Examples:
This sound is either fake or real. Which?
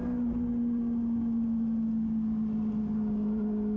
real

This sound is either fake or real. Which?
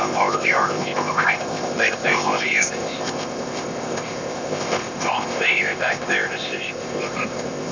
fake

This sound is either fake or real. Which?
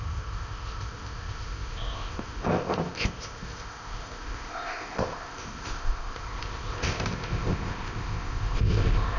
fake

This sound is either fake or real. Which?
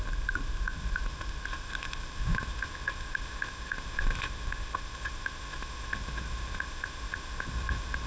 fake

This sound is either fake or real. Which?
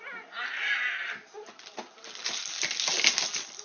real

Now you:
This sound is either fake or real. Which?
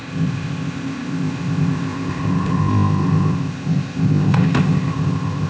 fake